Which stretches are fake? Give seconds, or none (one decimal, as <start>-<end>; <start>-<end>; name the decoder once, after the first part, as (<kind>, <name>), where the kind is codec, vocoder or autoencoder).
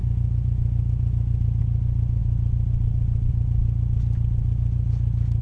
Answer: none